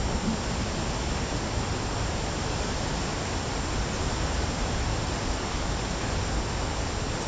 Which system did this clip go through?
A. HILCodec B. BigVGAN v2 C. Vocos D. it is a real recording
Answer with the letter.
D